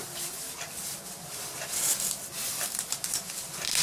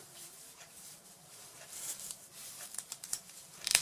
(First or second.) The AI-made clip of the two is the second